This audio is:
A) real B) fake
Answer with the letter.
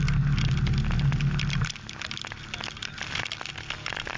A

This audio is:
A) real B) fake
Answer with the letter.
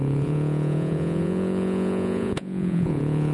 B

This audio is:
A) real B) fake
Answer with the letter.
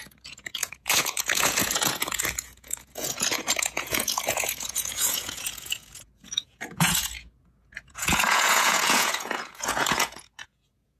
B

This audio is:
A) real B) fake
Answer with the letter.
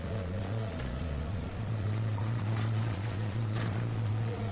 B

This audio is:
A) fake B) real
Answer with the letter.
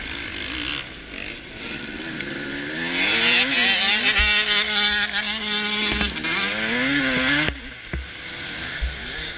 B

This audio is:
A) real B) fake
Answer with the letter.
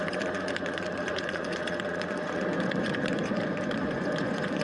B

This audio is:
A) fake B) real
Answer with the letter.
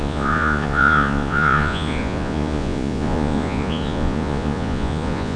A